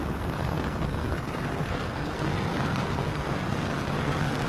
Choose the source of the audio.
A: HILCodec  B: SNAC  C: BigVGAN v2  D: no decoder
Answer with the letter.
B